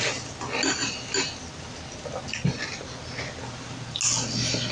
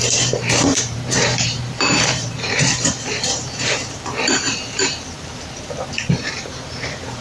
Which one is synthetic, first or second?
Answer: second